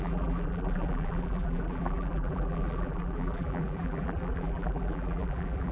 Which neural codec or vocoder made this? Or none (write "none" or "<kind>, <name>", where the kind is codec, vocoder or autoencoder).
vocoder, BigVGAN v2